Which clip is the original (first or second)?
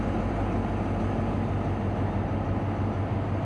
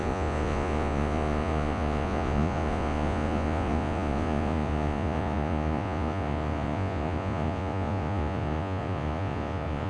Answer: first